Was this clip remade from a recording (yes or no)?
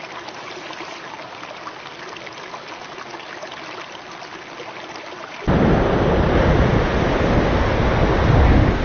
no